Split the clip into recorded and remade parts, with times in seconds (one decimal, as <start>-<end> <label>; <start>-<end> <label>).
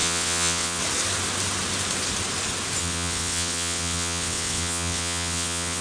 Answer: 0.0-0.8 remade; 0.8-2.8 recorded; 2.8-5.8 remade